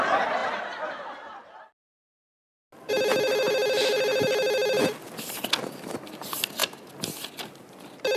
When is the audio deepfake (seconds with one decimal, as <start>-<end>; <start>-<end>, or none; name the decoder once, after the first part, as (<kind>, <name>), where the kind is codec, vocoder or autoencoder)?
none